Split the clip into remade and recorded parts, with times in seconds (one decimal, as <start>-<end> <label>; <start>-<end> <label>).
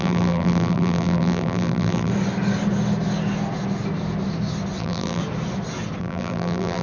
0.0-2.1 remade; 2.1-4.8 recorded; 4.8-5.2 remade; 5.2-6.0 recorded; 6.0-6.8 remade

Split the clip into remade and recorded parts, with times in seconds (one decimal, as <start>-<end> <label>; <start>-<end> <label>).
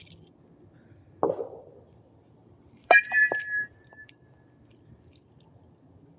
0.0-2.4 recorded; 2.4-4.4 remade; 4.4-6.2 recorded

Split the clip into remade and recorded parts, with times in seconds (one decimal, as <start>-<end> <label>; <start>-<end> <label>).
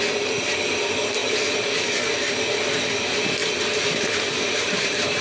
0.0-5.2 remade